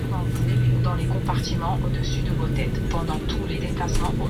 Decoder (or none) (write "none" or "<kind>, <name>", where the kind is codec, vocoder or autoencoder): none